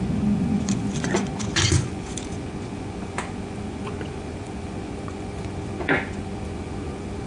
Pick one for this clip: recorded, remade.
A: remade